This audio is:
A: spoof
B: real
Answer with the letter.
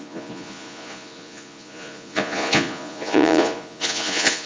A